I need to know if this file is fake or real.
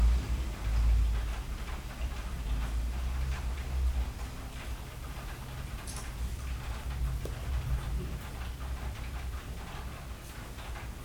real